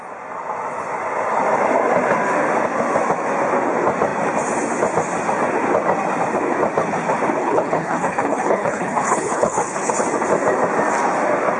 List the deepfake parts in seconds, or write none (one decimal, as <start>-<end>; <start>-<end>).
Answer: 7.4-9.9